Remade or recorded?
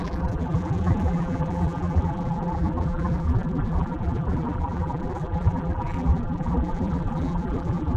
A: remade